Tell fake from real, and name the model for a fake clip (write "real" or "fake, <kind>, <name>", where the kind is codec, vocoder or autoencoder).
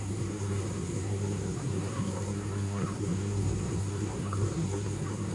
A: fake, codec, SNAC